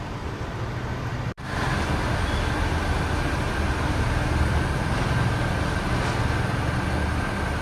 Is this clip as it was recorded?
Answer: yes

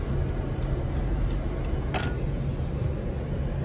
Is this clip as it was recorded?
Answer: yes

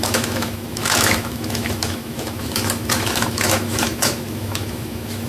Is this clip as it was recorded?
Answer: no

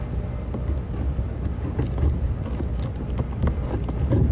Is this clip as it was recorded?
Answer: yes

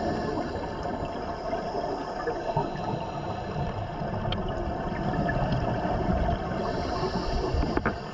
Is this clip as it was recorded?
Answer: yes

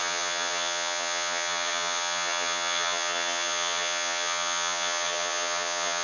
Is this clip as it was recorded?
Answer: no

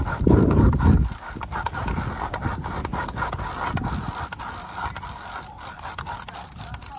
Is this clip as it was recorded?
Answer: yes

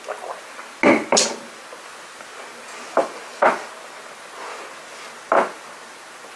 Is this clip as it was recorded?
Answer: yes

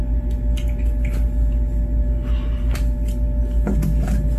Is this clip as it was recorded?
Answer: yes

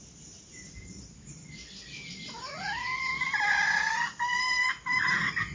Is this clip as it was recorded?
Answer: yes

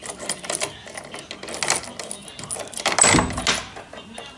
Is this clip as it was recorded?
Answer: yes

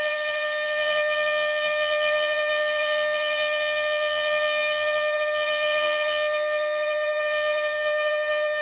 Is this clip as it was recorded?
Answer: no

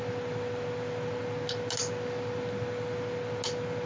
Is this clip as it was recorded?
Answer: yes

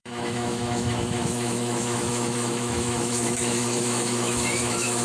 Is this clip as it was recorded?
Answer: no